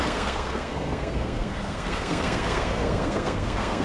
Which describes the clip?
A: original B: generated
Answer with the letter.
B